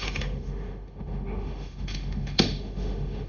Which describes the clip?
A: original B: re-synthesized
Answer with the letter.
B